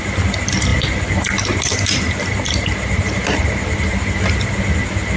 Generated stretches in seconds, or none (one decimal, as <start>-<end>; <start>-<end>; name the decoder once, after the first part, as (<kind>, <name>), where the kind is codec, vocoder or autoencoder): 0.7-3.8 (vocoder, BigVGAN v2)